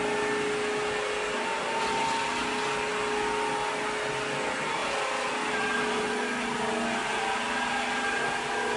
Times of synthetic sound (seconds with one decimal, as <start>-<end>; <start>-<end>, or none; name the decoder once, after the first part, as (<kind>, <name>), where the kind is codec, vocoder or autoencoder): none